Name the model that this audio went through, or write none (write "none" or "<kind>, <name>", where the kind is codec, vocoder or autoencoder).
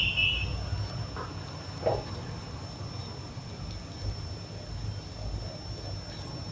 none